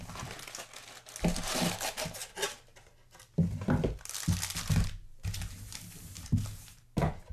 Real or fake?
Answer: real